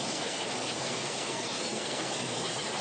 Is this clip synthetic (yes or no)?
yes